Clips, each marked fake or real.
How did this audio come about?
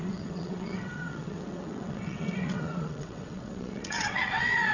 fake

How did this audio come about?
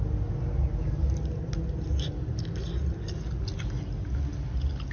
real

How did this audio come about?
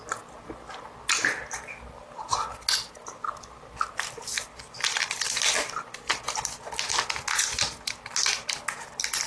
real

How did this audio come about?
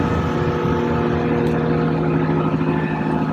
real